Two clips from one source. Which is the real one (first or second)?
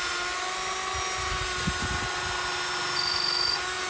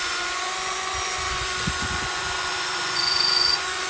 first